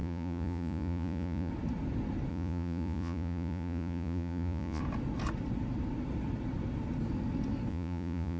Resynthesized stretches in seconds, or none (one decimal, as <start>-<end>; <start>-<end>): 0.0-1.5; 2.3-4.8; 7.7-8.4